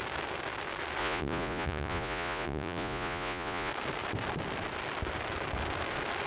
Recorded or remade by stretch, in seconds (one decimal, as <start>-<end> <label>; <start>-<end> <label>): 0.0-1.0 recorded; 1.0-3.7 remade; 3.7-6.3 recorded